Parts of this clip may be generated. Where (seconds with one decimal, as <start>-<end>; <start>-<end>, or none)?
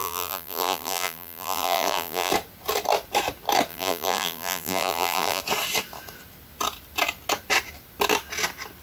0.0-2.3; 3.7-5.4